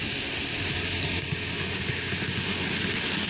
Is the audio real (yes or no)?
yes